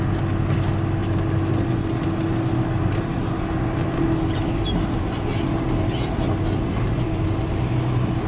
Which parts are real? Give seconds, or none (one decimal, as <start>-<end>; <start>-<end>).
0.0-8.3